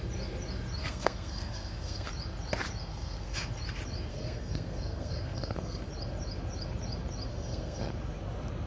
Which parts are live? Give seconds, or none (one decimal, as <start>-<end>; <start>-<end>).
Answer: 0.0-0.8; 2.1-2.9; 3.5-4.1; 5.9-7.3; 7.9-8.7